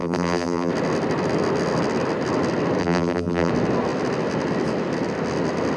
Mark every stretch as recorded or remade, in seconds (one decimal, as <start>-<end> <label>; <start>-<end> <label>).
0.0-0.7 remade; 0.7-2.8 recorded; 2.8-3.5 remade; 3.5-5.8 recorded

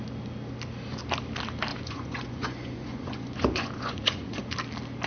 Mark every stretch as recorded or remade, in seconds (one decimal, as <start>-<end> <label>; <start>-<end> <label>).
0.0-1.7 recorded; 1.7-4.4 remade; 4.4-5.1 recorded